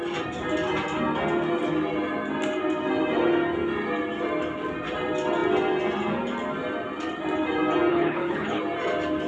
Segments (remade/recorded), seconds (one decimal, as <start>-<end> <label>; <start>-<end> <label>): 0.0-7.9 recorded; 7.9-8.6 remade; 8.6-9.3 recorded